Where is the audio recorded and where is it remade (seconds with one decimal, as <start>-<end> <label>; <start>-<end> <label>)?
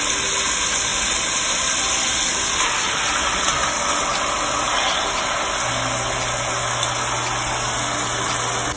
0.0-8.8 recorded